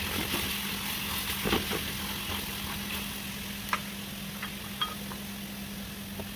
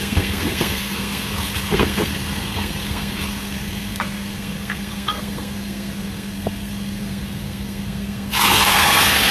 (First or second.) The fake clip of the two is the second